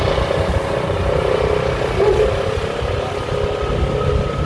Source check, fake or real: real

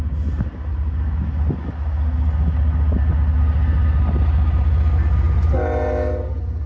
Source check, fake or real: real